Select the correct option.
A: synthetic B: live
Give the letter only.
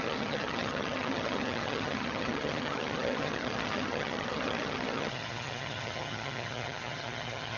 A